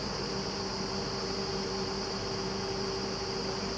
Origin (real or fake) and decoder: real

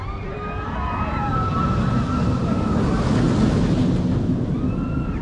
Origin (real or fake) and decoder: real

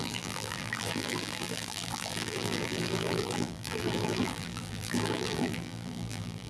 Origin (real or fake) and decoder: fake, vocoder, BigVGAN v2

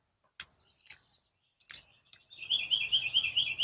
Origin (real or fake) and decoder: real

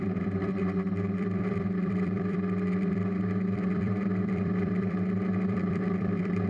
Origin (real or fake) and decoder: fake, vocoder, BigVGAN v2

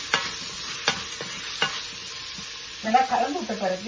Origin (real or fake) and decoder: real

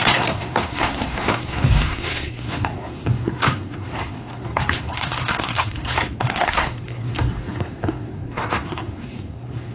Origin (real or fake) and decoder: fake, codec, SNAC